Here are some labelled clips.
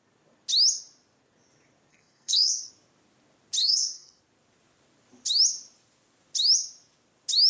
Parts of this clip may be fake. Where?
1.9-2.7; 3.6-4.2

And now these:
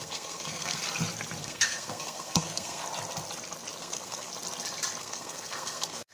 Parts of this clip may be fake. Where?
0.0-0.8; 1.4-2.8; 3.8-4.3; 5.0-6.1

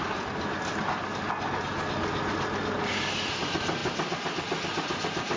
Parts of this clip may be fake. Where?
none

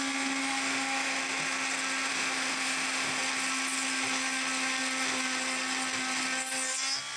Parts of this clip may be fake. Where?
0.4-1.2; 2.1-3.2

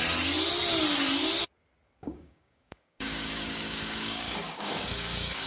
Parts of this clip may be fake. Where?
2.0-5.5

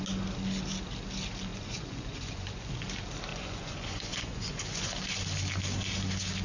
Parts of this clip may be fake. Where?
1.5-2.7; 3.3-4.9

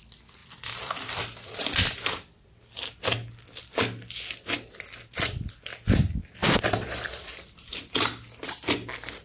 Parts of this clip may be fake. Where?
0.4-1.2; 6.4-7.7

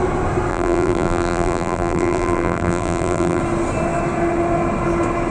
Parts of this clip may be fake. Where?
0.5-3.4